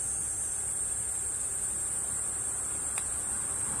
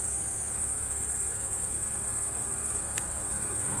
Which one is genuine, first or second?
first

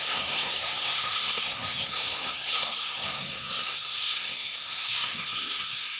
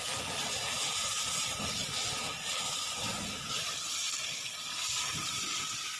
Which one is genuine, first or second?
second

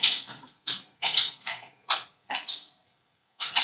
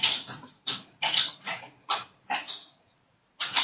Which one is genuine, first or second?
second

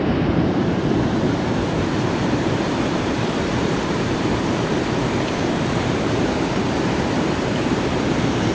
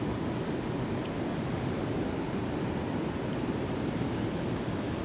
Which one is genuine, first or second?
second